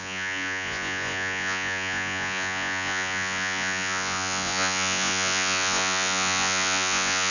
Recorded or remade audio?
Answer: remade